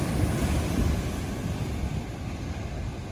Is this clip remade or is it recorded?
recorded